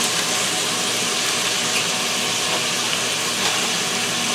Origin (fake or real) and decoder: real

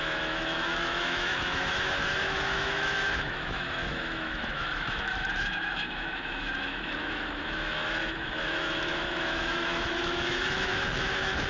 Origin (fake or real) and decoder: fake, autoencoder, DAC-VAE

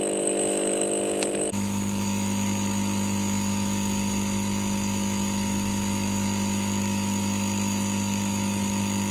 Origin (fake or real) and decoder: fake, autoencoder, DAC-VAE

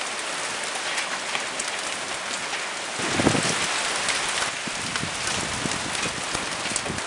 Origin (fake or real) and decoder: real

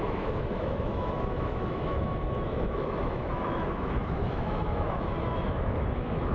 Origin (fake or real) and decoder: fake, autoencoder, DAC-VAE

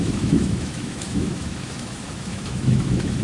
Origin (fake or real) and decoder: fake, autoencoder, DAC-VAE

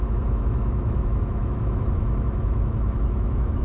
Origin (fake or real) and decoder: fake, autoencoder, DAC-VAE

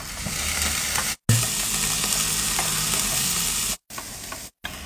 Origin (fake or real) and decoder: real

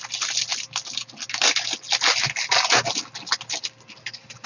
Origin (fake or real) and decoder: real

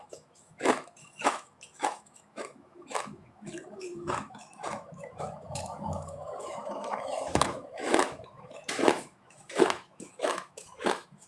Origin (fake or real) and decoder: fake, autoencoder, DAC-VAE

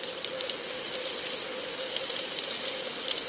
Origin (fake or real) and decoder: real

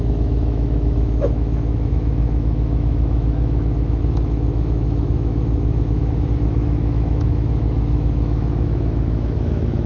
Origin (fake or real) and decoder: fake, autoencoder, DAC-VAE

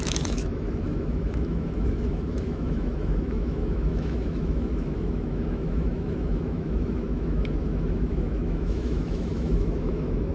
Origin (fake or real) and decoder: fake, autoencoder, DAC-VAE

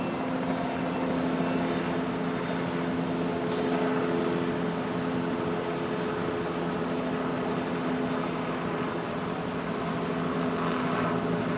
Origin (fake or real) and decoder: real